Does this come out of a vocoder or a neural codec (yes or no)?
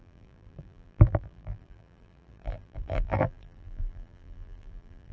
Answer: yes